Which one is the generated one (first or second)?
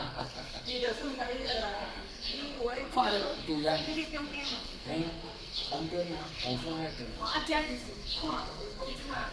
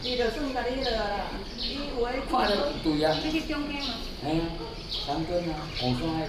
first